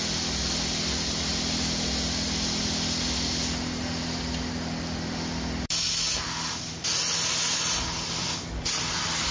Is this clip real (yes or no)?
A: yes